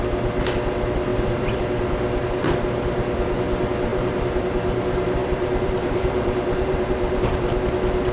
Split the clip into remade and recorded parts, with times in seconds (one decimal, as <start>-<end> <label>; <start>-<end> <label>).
0.0-1.1 recorded; 1.1-1.6 remade; 1.6-3.9 recorded; 3.9-4.4 remade; 4.4-5.2 recorded; 5.2-7.5 remade; 7.5-8.1 recorded